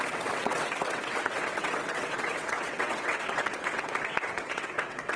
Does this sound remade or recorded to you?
remade